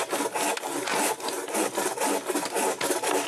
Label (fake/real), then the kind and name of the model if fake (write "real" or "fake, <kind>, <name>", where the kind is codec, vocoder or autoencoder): real